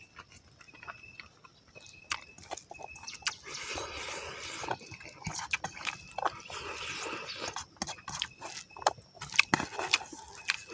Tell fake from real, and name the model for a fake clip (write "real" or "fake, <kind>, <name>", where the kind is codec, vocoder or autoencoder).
real